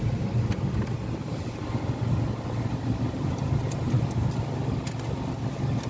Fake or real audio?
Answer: real